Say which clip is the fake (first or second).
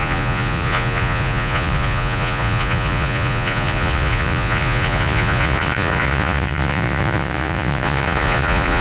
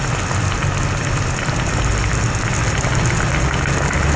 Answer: first